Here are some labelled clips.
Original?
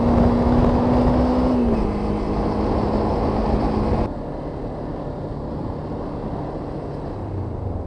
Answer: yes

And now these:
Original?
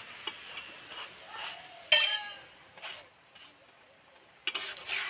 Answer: yes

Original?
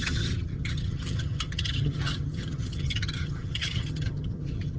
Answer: no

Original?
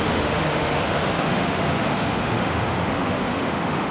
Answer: no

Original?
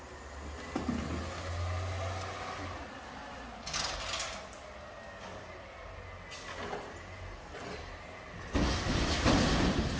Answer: yes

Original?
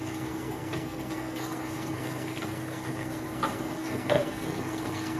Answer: no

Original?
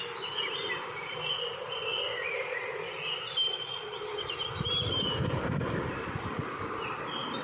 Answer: yes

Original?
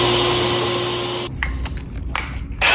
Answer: yes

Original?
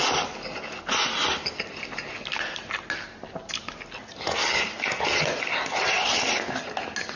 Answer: yes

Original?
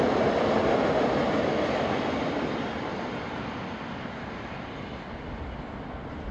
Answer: yes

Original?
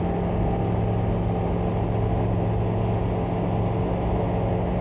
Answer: yes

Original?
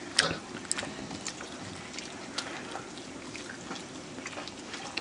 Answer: yes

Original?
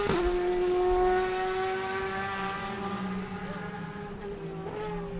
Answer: yes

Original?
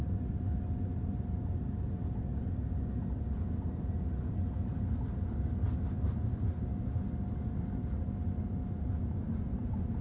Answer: yes